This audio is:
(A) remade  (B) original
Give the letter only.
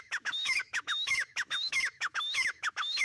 A